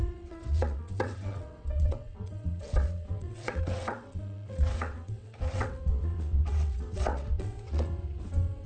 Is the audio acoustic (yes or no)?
no